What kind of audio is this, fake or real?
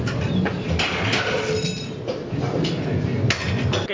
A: real